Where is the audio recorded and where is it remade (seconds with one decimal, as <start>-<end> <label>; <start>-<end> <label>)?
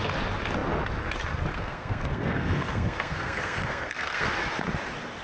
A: 0.0-1.5 recorded; 1.5-4.3 remade; 4.3-5.2 recorded